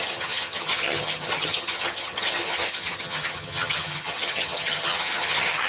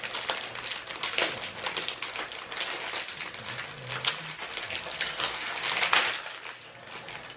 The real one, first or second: second